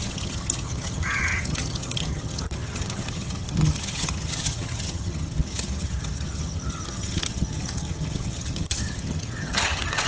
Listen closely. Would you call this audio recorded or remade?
remade